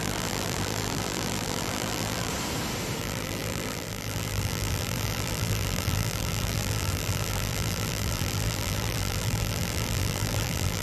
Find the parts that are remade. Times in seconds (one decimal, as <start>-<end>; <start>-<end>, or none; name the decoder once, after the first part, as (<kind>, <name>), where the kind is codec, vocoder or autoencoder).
0.0-2.3 (vocoder, BigVGAN v2); 3.0-10.8